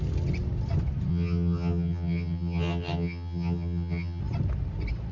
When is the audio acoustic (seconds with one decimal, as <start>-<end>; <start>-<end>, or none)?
0.0-1.1; 4.2-5.1